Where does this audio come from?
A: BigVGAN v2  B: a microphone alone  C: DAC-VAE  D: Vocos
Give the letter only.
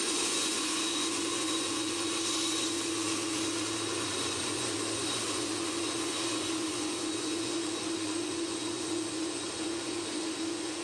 D